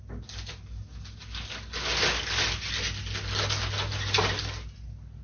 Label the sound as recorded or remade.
recorded